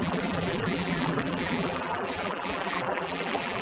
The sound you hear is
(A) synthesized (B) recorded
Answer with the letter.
A